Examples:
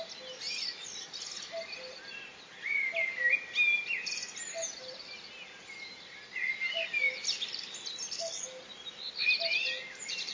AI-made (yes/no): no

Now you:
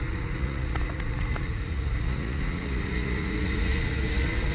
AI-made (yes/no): yes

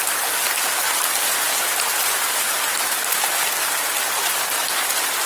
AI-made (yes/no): no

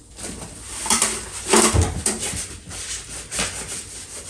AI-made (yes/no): yes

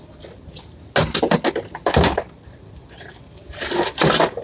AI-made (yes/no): no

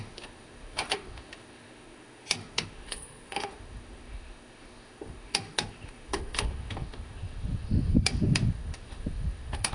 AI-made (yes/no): yes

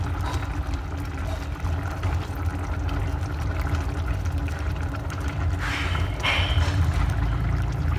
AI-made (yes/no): no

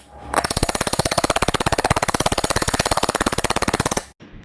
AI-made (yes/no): no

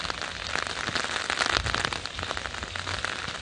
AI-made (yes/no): no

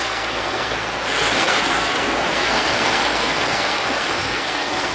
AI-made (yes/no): yes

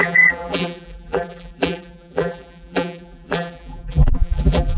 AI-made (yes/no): yes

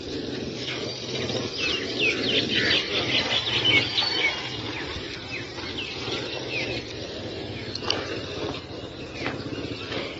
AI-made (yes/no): no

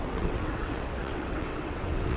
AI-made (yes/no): yes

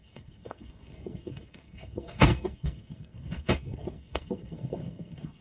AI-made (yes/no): yes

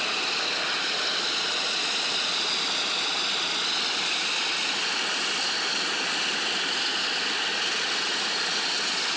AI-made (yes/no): no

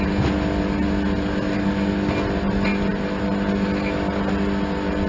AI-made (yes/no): no